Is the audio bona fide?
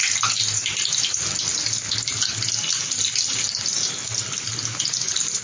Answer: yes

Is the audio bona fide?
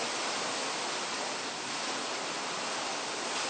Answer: yes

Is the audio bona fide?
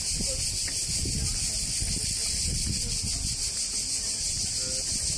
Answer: yes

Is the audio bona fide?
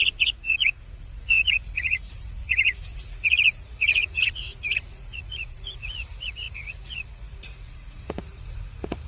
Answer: no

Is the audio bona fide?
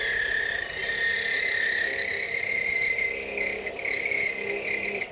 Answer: yes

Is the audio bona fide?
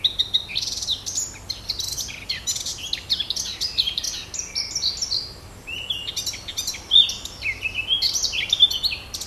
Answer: yes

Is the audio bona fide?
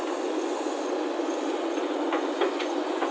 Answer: no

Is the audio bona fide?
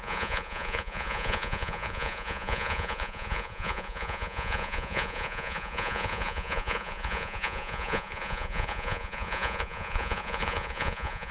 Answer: no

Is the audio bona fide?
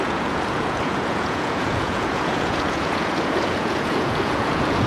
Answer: no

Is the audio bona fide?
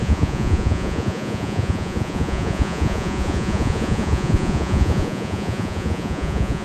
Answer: no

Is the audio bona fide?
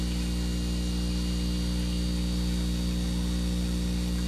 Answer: yes